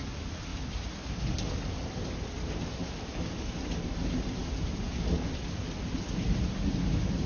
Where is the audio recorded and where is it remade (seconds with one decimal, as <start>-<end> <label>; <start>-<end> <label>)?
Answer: 0.0-7.3 recorded